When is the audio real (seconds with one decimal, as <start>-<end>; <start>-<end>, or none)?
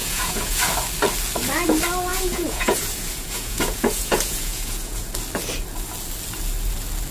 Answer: 0.6-2.1; 5.1-7.1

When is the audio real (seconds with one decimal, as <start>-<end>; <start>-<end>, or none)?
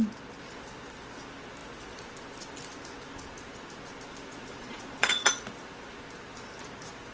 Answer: 0.0-4.3; 5.3-7.1